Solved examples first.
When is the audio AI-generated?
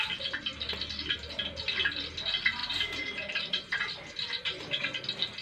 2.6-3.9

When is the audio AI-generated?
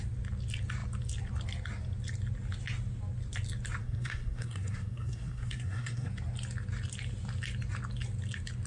3.8-6.1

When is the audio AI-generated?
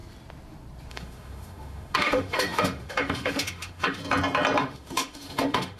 0.9-4.0; 4.6-5.8